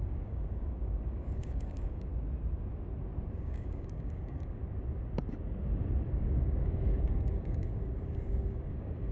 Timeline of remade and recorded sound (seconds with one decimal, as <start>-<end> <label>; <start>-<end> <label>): 0.0-2.1 remade; 2.1-3.4 recorded; 3.4-4.6 remade; 4.6-6.1 recorded; 6.1-9.1 remade